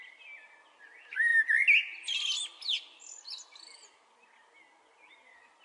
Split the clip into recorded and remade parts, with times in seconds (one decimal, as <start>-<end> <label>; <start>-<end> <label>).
0.0-5.6 recorded